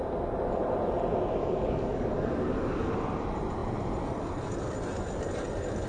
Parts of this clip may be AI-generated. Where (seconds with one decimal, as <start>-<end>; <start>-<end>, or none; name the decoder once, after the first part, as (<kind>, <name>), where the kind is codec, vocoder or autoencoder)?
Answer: 1.4-2.9 (codec, DAC)